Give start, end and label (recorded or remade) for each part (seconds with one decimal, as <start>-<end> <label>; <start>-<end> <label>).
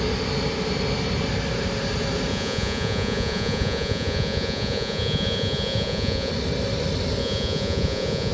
0.0-2.3 recorded; 2.3-6.3 remade; 6.3-7.2 recorded; 7.2-8.3 remade